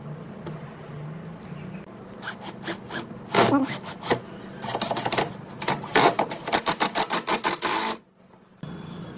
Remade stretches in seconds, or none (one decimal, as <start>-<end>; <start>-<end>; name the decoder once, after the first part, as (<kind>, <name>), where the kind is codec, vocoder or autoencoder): 3.4-4.4 (autoencoder, DAC-VAE)